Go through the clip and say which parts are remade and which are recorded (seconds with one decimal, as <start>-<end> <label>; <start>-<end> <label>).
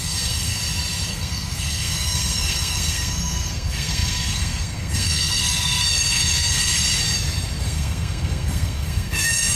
0.0-0.6 remade; 0.6-1.1 recorded; 1.1-6.7 remade; 6.7-7.6 recorded; 7.6-9.6 remade